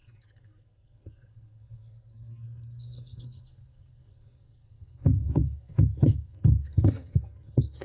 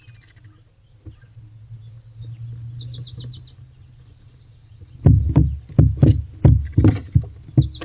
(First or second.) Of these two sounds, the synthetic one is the first